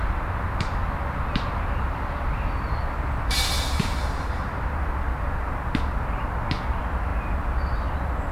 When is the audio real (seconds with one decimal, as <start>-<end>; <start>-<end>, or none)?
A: 0.0-8.3